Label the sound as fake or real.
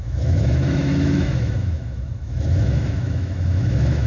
fake